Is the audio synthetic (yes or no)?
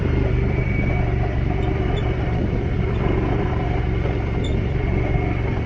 yes